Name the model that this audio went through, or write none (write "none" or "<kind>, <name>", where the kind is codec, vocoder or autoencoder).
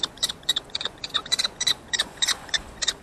vocoder, Vocos